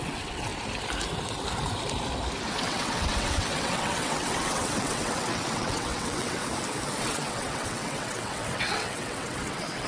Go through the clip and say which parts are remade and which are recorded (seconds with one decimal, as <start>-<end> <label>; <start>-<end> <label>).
0.0-0.5 remade; 0.5-2.5 recorded; 2.5-6.4 remade; 6.4-7.0 recorded; 7.0-9.9 remade